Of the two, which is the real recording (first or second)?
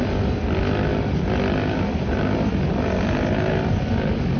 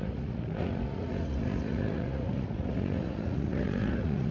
first